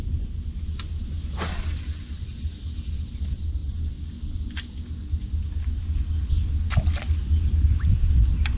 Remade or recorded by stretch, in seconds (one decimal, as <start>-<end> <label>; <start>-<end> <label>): 0.0-8.6 recorded